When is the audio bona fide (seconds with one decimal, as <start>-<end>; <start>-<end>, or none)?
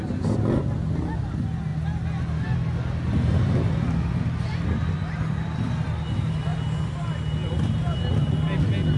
0.0-9.0